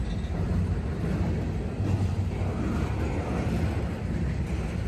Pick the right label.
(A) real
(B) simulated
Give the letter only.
A